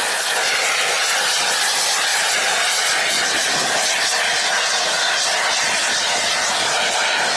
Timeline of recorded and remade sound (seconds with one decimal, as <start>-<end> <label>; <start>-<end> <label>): 0.0-7.4 recorded